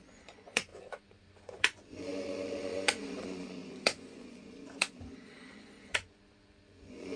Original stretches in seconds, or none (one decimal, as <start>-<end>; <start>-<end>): none